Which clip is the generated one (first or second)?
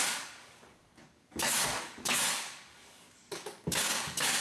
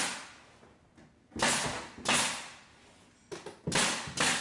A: first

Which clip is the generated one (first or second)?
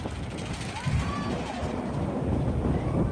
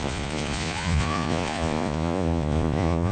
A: second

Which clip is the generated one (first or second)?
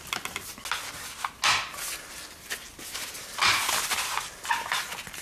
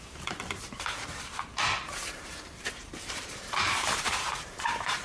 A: second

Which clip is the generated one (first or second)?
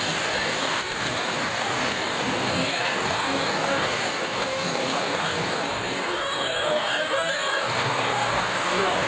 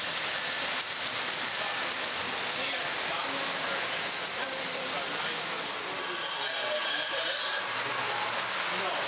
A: first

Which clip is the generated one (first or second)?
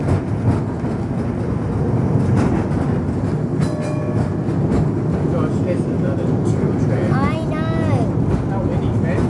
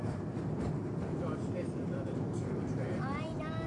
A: second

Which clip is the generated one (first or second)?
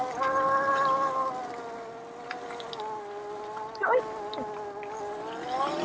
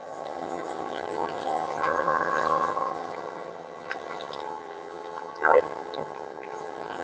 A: second